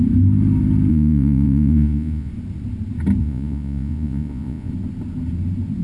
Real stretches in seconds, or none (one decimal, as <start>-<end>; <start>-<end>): 0.0-0.9; 2.3-3.2; 4.7-5.8